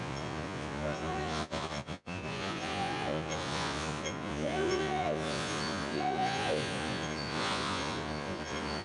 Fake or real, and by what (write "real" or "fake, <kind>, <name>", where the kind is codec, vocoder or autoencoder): fake, vocoder, Vocos